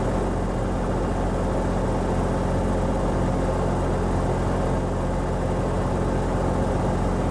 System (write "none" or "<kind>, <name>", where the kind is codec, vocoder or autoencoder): none